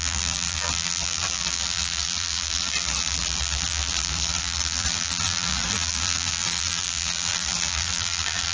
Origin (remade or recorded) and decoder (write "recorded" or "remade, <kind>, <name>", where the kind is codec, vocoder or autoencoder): remade, vocoder, BigVGAN v2